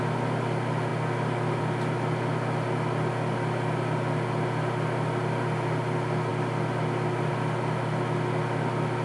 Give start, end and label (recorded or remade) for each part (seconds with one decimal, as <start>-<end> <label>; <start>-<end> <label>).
0.0-9.0 recorded